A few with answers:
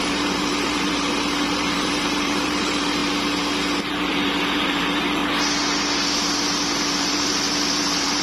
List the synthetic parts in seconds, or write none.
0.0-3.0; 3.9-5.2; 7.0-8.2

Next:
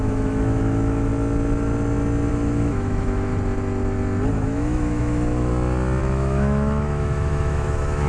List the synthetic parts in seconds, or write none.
0.0-1.1; 2.3-3.3; 4.3-5.5; 6.0-8.1

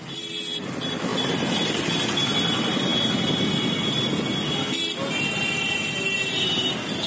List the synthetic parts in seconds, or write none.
none

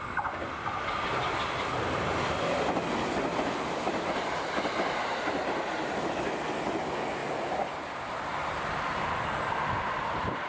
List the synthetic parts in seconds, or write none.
7.2-8.6

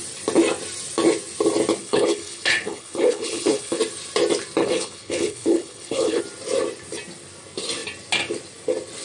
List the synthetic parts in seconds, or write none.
1.8-3.8; 4.6-6.2